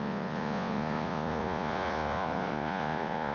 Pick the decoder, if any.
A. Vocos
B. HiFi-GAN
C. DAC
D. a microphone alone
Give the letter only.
A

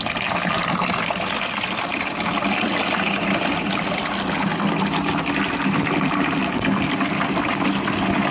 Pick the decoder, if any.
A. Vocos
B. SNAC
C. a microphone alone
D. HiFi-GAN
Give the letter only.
C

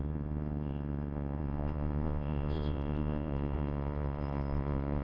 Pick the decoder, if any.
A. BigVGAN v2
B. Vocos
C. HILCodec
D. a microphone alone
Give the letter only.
B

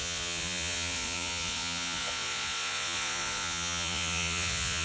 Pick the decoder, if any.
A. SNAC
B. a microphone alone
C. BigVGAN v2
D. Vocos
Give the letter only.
D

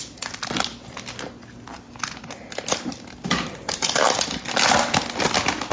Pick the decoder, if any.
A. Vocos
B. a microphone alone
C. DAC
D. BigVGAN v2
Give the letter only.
B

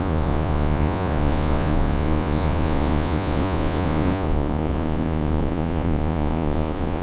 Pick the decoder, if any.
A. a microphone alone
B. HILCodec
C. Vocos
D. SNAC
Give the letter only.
C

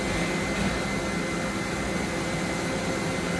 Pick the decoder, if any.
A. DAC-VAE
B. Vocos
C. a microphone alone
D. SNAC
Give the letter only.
C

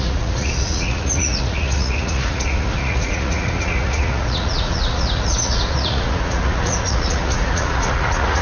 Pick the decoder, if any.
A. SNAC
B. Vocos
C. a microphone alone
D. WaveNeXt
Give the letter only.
B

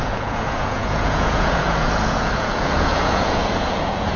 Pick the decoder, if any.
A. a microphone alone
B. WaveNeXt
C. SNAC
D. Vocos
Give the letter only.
D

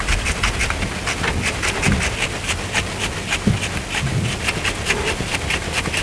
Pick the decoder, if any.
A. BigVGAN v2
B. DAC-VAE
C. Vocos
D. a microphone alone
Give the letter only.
D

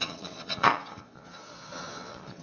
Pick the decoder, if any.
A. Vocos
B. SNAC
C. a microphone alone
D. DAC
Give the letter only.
A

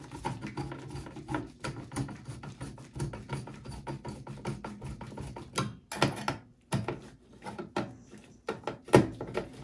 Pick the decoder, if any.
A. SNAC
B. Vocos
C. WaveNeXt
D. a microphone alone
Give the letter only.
D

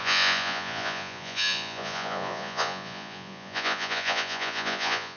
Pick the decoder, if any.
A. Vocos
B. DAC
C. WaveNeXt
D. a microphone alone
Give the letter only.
A